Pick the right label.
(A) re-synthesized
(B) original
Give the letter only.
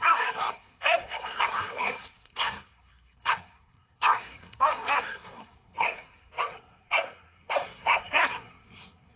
A